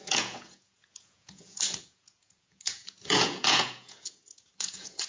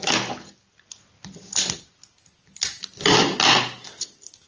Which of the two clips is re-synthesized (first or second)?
first